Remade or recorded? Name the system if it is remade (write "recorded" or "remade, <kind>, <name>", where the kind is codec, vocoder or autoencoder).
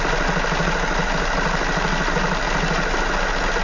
recorded